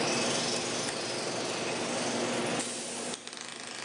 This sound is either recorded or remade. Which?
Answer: recorded